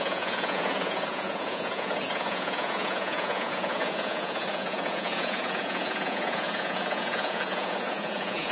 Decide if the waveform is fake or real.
fake